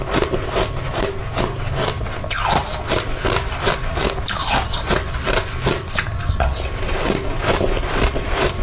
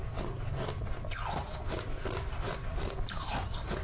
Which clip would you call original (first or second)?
first